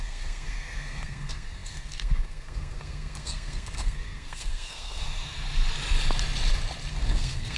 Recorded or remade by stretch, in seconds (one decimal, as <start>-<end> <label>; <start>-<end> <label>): 0.0-5.3 remade; 5.3-6.9 recorded; 6.9-7.6 remade